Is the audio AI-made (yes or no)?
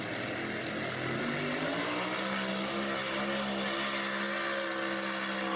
no